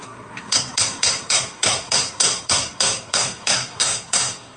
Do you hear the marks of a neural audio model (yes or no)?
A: yes